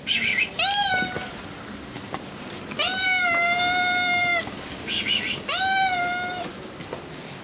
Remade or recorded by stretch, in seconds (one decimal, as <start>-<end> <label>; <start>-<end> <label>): 0.0-7.4 recorded